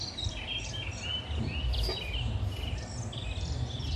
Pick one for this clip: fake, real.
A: real